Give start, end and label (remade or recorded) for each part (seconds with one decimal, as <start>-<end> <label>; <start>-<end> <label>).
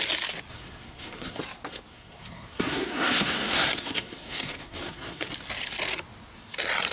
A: 0.0-0.5 recorded; 0.5-1.4 remade; 1.4-1.9 recorded; 1.9-5.3 remade; 5.3-6.9 recorded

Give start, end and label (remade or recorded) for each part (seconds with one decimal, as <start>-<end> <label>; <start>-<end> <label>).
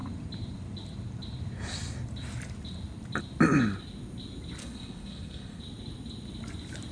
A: 0.0-4.6 recorded; 4.6-5.6 remade; 5.6-6.9 recorded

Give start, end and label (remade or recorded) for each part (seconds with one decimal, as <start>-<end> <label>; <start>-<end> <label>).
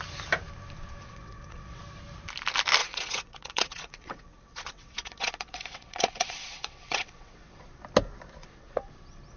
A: 0.0-1.0 recorded; 1.0-1.8 remade; 1.8-2.8 recorded; 2.8-7.6 remade; 7.6-8.4 recorded; 8.4-8.9 remade; 8.9-9.4 recorded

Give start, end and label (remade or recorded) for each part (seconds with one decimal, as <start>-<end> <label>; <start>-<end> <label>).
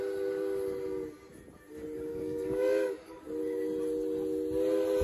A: 0.0-2.1 recorded; 2.1-3.2 remade; 3.2-5.0 recorded